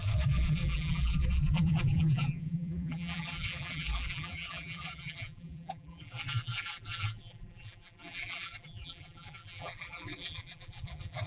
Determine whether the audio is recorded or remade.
remade